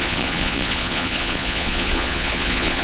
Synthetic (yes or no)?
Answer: yes